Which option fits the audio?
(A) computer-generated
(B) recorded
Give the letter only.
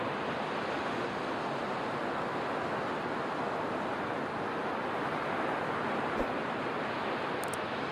B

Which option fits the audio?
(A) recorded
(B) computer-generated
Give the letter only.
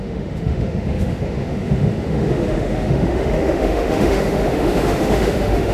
B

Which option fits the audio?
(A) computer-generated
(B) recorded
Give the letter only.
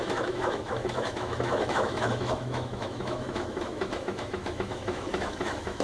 A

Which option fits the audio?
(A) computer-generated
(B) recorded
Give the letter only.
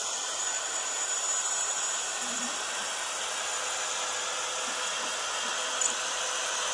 B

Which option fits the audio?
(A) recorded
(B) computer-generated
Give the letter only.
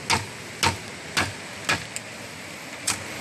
A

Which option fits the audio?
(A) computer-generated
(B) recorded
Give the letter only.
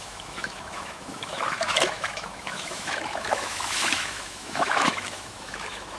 A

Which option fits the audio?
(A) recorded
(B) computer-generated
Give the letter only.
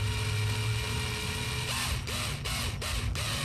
A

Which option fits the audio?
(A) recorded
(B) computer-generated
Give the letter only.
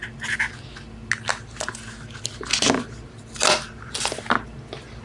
A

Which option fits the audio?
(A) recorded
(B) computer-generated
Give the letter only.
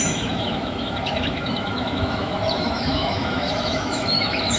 B